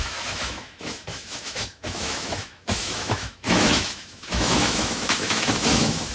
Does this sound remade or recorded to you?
remade